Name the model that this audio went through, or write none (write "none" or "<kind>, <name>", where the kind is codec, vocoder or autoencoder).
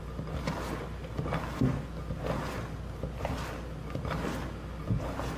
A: none